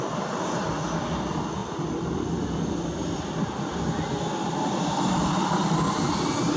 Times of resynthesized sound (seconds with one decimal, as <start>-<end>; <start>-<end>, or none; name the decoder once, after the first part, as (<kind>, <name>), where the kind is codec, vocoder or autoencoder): none